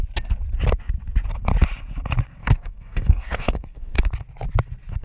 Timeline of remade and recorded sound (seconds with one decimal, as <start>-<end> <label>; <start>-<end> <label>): 0.0-2.4 recorded; 2.4-4.0 remade; 4.0-5.0 recorded